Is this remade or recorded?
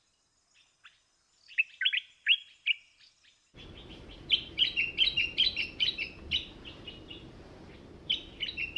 recorded